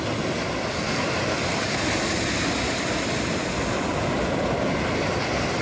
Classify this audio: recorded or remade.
recorded